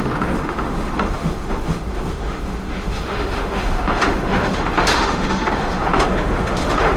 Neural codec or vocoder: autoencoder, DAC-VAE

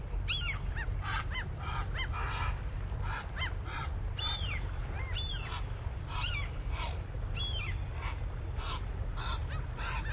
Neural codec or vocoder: none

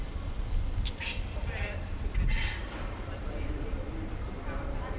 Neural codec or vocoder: vocoder, BigVGAN v2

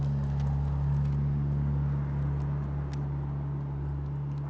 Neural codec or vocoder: none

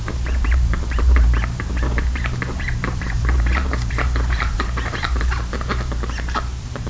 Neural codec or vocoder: vocoder, BigVGAN v2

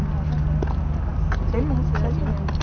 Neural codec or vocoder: none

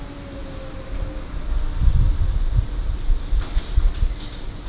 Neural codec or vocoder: none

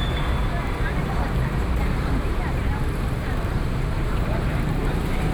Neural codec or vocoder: vocoder, BigVGAN v2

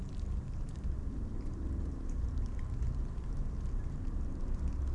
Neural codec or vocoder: vocoder, BigVGAN v2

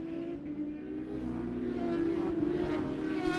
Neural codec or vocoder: none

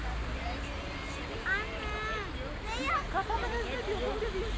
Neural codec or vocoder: none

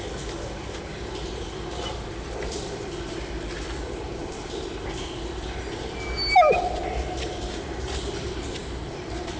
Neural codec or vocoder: none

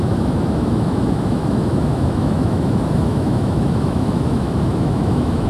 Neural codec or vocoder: autoencoder, DAC-VAE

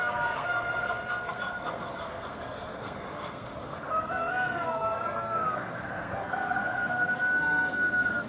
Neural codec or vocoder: codec, SNAC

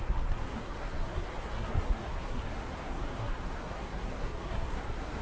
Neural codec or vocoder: codec, SNAC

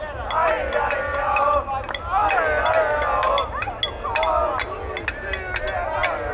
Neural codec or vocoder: none